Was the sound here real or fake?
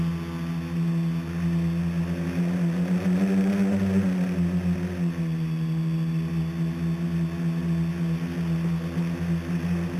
real